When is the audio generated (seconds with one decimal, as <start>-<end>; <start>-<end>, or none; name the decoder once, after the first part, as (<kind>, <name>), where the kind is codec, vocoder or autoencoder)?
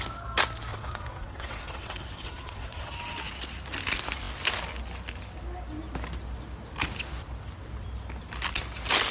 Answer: 0.7-2.9 (vocoder, WaveNeXt)